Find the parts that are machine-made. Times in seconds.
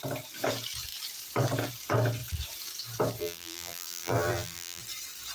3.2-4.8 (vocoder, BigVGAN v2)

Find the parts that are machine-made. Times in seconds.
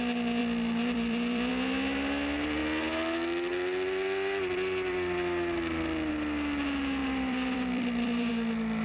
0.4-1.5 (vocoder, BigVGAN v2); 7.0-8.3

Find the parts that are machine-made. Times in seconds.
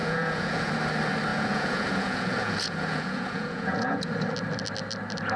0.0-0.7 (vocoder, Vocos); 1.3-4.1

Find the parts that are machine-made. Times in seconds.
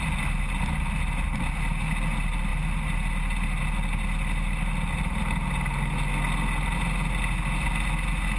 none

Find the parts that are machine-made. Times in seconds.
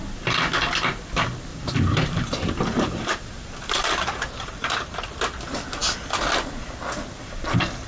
1.5-5.2 (vocoder, BigVGAN v2)